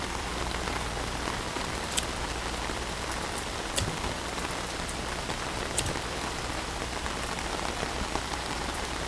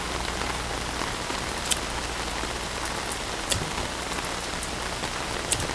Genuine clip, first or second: second